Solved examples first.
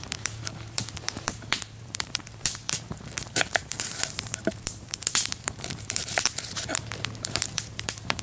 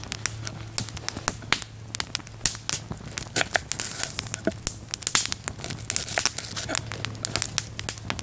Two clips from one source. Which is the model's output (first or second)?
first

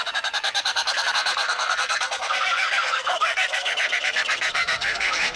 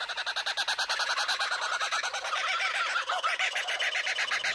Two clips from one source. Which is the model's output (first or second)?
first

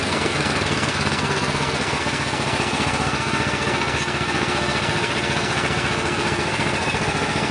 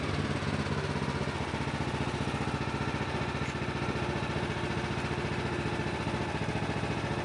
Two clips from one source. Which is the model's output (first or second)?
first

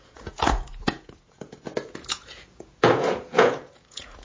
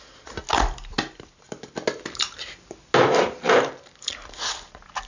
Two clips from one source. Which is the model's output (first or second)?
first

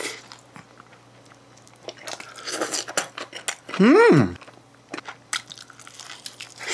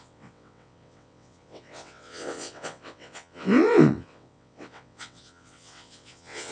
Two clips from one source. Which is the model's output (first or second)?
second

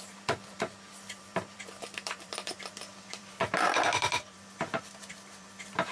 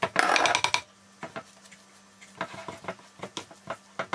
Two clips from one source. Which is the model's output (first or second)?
first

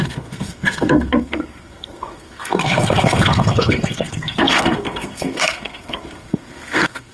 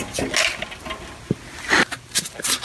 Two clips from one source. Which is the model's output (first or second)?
first